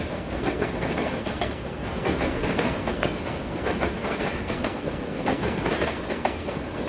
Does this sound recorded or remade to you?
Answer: remade